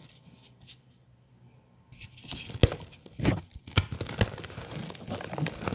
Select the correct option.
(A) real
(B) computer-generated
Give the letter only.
A